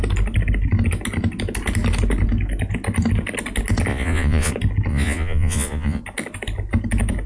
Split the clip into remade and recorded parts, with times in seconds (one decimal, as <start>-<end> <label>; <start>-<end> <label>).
0.0-3.9 recorded; 3.9-4.5 remade; 4.5-4.9 recorded; 4.9-6.0 remade; 6.0-7.3 recorded